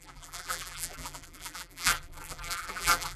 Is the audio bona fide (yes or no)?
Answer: no